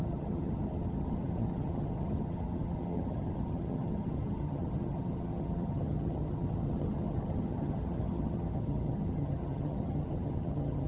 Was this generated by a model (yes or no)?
yes